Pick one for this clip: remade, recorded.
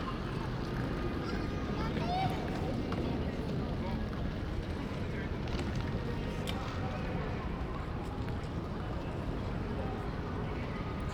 recorded